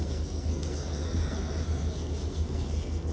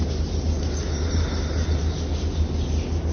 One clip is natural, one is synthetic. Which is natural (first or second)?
second